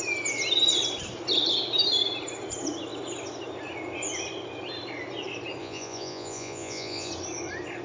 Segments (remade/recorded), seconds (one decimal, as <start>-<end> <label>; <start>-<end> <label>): 0.0-5.6 recorded; 5.6-7.1 remade; 7.1-7.8 recorded